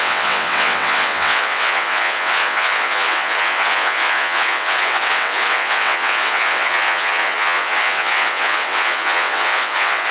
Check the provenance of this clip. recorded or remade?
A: remade